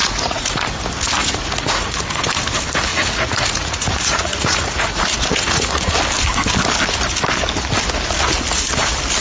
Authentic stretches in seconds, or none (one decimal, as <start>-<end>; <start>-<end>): 0.7-1.2; 2.2-2.9; 5.9-9.2